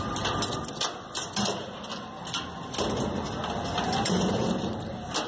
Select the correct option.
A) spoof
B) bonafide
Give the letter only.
B